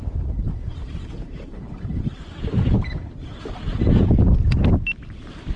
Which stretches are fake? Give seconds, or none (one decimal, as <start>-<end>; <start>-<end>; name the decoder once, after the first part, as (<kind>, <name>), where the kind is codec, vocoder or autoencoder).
0.0-2.2 (vocoder, BigVGAN v2)